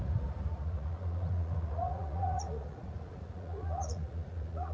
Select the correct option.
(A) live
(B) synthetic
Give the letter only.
B